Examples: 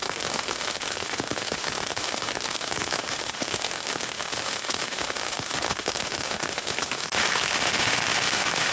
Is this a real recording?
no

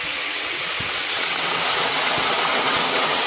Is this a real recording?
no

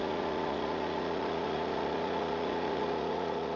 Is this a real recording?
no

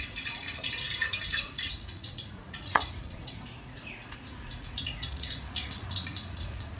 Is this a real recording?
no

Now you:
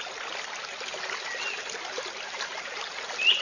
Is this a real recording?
yes